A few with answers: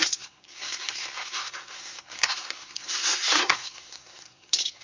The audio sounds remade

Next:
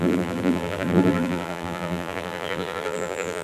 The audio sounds remade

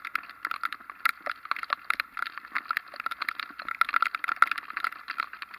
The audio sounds recorded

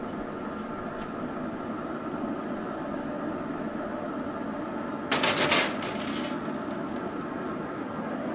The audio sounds recorded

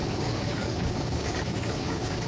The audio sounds remade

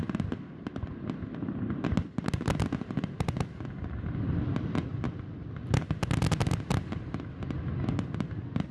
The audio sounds recorded